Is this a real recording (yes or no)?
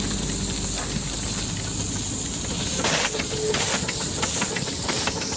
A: yes